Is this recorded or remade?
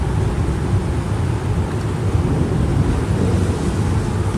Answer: recorded